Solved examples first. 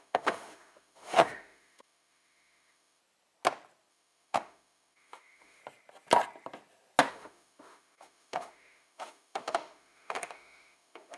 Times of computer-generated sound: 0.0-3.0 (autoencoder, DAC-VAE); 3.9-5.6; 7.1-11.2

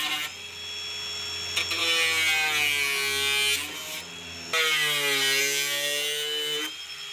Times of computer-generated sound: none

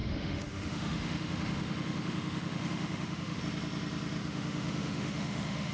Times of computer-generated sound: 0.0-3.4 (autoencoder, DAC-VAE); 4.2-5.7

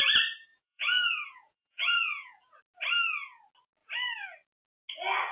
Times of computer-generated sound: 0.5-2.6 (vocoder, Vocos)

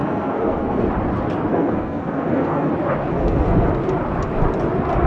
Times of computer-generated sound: 0.0-0.9 (codec, SNAC); 1.5-2.7; 3.1-3.7